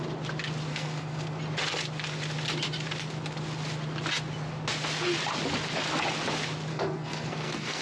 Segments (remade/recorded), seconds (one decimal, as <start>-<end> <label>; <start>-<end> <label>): 0.0-0.7 recorded; 0.7-1.4 remade; 1.4-6.7 recorded; 6.7-7.8 remade